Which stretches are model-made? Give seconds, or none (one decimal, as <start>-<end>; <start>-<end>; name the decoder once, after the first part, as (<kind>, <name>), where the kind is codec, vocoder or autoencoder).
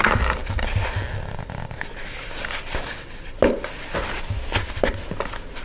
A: none